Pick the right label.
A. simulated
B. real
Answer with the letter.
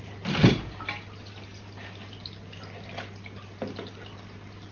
B